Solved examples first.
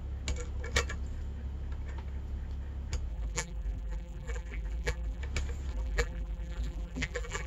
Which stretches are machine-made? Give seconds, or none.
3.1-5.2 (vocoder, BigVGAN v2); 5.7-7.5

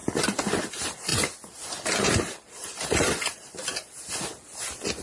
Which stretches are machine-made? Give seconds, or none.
none

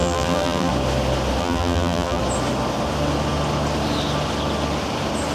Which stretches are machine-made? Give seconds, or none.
0.0-0.7 (vocoder, BigVGAN v2); 1.4-2.2